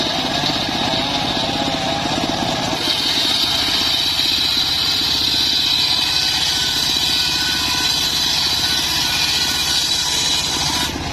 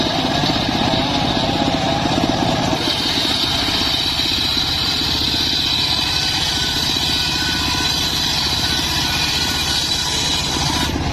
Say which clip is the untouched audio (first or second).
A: first